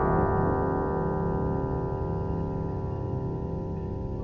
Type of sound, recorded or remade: recorded